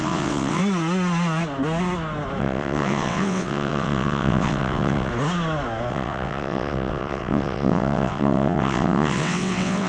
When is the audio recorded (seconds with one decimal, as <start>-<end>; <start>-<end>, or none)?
0.6-2.4; 5.1-5.9